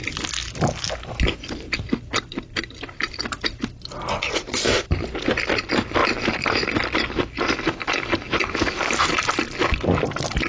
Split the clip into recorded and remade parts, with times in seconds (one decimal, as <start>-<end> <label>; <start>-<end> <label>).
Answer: 0.0-10.5 recorded